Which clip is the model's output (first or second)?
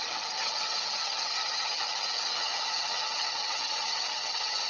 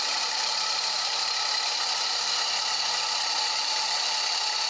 first